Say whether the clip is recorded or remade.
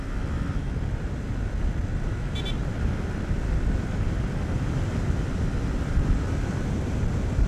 recorded